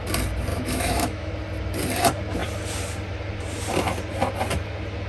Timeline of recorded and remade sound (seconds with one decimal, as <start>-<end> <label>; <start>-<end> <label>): 0.0-0.5 recorded; 0.5-1.3 remade; 1.3-5.1 recorded